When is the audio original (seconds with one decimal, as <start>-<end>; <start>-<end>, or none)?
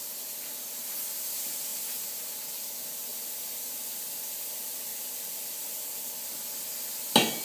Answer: 0.0-3.1; 3.6-4.9; 6.1-7.4